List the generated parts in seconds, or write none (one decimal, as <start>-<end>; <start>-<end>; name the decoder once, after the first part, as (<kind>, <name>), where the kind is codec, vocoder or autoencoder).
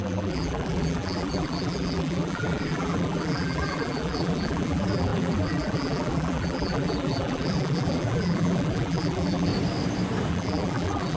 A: 0.0-9.5 (vocoder, BigVGAN v2); 10.3-11.2